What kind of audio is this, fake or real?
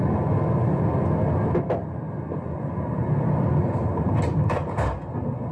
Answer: real